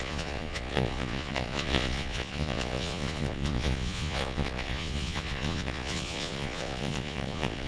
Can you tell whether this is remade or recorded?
remade